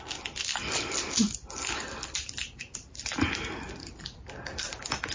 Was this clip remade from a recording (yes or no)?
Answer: no